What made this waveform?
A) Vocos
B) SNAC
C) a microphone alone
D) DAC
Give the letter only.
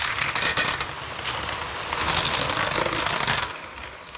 C